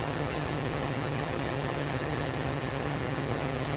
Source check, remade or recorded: remade